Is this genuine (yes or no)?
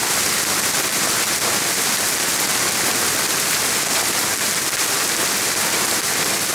yes